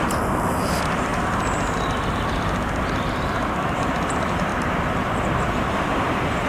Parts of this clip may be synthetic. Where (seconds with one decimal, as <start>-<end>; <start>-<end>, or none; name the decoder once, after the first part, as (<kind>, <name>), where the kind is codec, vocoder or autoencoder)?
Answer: 0.0-1.1 (vocoder, BigVGAN v2); 2.1-6.5